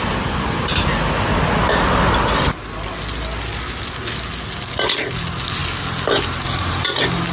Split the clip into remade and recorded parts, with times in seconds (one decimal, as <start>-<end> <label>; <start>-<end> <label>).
0.0-7.3 recorded